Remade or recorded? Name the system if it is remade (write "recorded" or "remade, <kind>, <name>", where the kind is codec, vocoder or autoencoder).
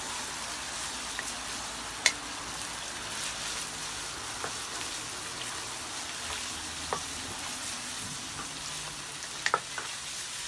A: recorded